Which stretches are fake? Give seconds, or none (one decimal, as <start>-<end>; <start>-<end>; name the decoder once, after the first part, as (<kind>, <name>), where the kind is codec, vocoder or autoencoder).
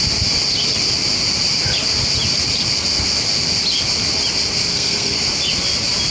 4.7-5.2 (codec, SNAC)